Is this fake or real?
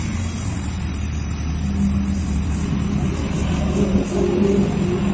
real